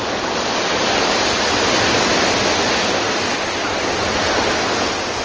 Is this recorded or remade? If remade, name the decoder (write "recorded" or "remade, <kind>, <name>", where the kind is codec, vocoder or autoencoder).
recorded